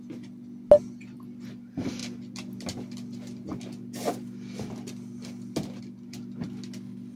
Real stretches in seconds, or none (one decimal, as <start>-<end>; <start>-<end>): 0.0-7.2